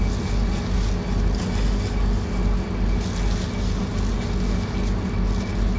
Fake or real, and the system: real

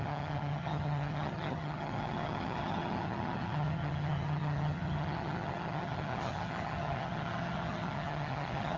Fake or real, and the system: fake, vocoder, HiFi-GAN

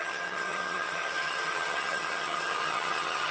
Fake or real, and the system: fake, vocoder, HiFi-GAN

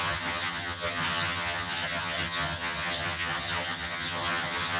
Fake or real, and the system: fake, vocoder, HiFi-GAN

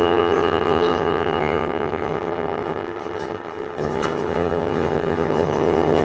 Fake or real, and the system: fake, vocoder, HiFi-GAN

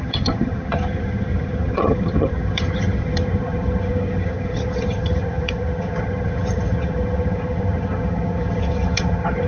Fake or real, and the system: fake, vocoder, HiFi-GAN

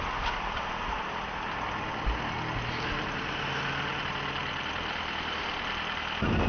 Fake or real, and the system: real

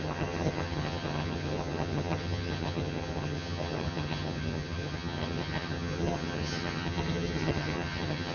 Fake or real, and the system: fake, vocoder, HiFi-GAN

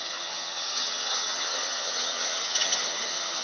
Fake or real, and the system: fake, vocoder, HiFi-GAN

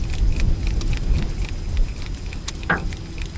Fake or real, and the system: real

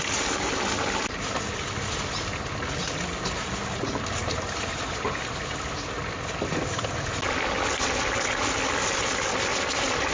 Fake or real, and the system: real